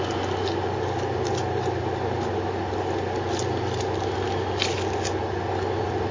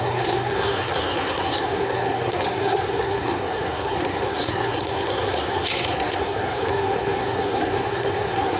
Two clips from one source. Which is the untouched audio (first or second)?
first